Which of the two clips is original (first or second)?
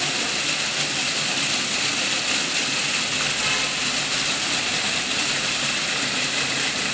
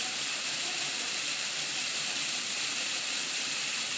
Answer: first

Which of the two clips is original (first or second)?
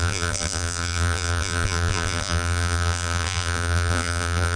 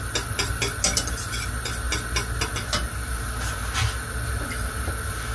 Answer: second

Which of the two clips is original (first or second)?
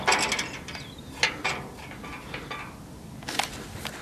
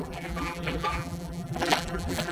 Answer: first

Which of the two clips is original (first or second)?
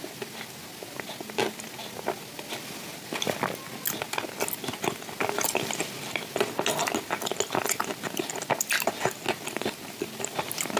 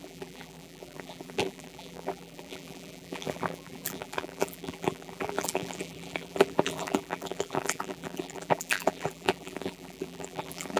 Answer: first